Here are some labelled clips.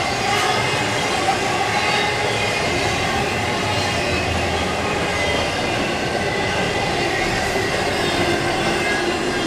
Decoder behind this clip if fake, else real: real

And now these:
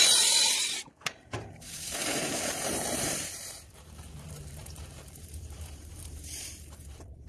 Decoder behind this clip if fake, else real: fake, vocoder, BigVGAN v2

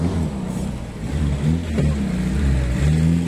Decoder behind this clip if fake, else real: real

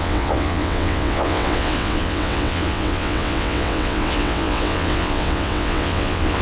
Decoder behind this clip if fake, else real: fake, vocoder, WaveNeXt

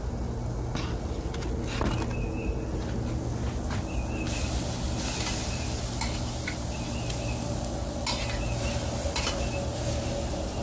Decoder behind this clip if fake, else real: real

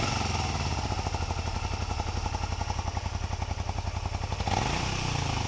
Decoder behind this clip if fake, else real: real